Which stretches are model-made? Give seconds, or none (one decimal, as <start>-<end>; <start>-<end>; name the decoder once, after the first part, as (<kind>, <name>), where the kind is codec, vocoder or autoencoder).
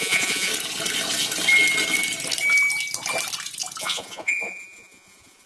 0.0-0.5 (vocoder, Vocos); 3.8-5.5